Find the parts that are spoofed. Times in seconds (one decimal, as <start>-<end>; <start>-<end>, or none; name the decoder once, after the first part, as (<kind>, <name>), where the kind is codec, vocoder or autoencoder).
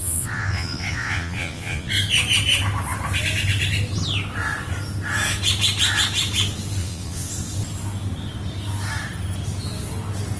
0.0-1.9 (vocoder, Vocos); 6.8-7.3